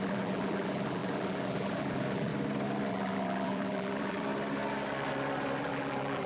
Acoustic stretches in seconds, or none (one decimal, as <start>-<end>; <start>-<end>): 2.3-2.9; 4.3-5.6